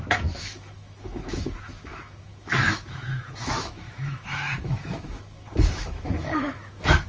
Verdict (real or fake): fake